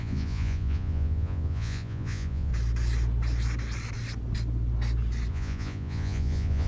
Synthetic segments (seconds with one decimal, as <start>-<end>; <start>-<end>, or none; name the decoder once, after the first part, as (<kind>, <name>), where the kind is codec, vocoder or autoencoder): 0.0-2.5 (vocoder, Vocos); 5.3-6.7